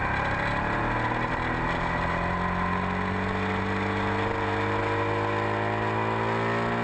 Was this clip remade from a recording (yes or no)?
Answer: no